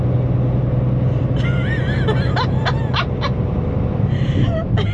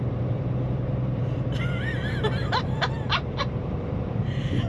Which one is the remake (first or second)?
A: second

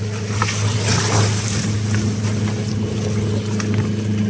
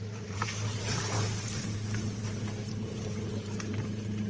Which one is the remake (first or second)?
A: second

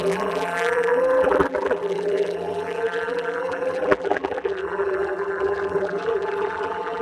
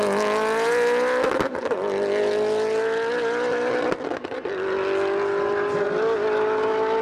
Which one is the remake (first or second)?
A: first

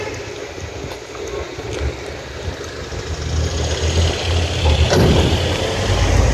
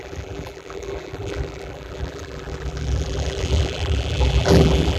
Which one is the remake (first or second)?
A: second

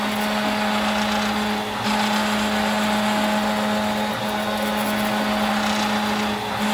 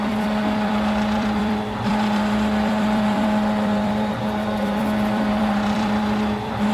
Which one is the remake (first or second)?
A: second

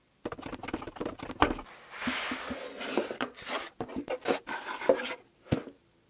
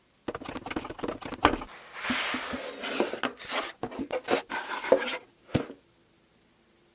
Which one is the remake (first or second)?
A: first